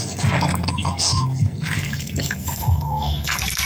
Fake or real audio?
fake